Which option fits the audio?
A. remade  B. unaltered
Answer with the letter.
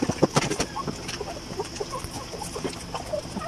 A